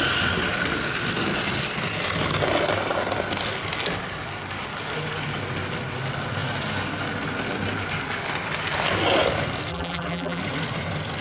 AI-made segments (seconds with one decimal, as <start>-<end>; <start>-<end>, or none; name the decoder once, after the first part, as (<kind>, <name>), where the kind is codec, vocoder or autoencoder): 9.7-10.4 (vocoder, BigVGAN v2)

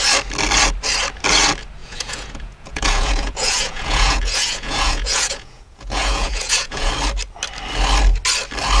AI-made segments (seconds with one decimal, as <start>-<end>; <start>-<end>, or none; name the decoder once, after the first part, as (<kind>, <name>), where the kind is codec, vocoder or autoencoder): 1.8-6.9 (vocoder, Vocos)

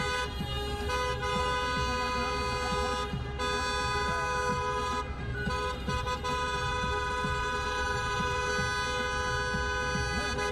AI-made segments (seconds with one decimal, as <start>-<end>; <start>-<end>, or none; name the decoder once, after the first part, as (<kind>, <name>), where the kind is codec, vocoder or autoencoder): 4.5-8.5 (vocoder, BigVGAN v2)

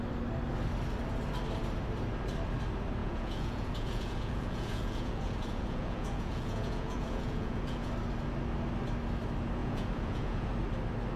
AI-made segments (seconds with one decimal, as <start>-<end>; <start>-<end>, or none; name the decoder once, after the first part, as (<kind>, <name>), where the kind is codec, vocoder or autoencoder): 3.0-7.9 (vocoder, Vocos); 9.6-10.5

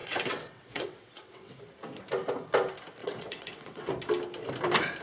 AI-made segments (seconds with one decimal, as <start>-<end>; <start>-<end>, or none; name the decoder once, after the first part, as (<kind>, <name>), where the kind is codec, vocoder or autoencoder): 0.0-1.6 (vocoder, WaveNeXt); 3.0-3.9